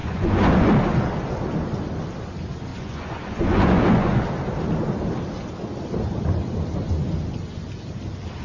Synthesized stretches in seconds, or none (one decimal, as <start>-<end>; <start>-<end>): 0.0-0.7; 2.7-4.2